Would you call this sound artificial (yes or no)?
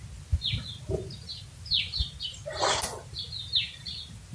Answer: no